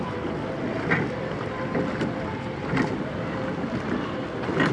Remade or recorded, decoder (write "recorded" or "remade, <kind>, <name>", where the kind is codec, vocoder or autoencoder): recorded